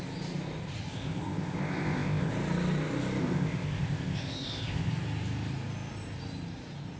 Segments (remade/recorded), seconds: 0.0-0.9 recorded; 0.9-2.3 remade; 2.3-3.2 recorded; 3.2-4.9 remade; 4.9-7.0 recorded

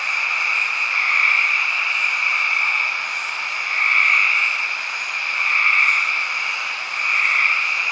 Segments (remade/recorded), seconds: 0.0-7.9 recorded

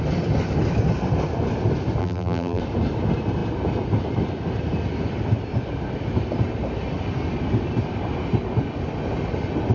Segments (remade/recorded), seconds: 0.0-2.0 recorded; 2.0-2.6 remade; 2.6-9.7 recorded

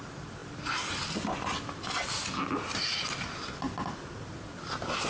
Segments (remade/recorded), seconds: 0.0-5.1 recorded

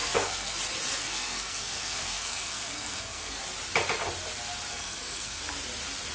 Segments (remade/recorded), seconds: 0.0-0.6 remade; 0.6-1.0 recorded; 1.0-3.4 remade; 3.4-4.7 recorded; 4.7-5.4 remade; 5.4-6.1 recorded